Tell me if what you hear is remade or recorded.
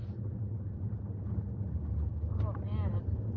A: recorded